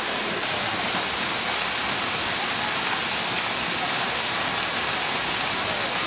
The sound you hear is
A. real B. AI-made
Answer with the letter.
A